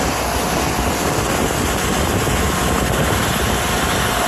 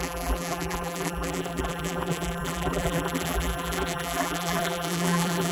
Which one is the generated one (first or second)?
second